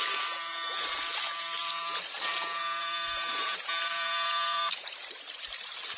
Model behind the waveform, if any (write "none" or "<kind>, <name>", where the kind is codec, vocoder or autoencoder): vocoder, BigVGAN v2